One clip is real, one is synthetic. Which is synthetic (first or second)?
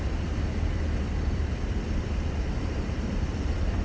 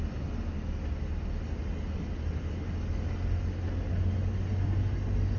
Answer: first